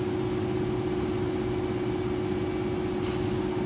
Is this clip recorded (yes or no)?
yes